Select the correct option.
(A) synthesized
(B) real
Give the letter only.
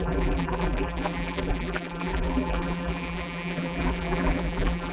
A